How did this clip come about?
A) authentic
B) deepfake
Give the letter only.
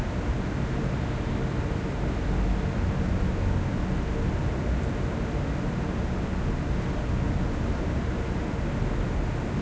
A